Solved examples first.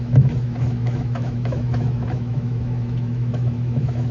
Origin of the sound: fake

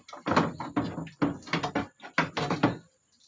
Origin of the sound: real